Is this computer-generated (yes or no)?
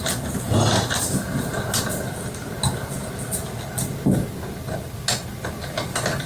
no